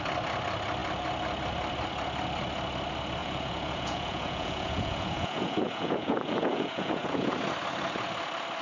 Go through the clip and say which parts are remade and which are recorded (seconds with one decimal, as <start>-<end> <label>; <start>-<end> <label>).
0.0-3.2 recorded; 3.2-7.3 remade; 7.3-8.6 recorded